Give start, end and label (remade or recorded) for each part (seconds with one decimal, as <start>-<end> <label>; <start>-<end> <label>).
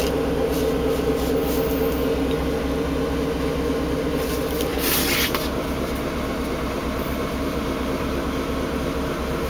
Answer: 0.0-4.7 recorded; 4.7-8.2 remade; 8.2-9.5 recorded